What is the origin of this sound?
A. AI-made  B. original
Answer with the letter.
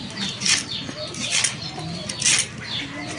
B